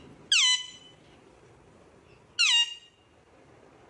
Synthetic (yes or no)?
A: no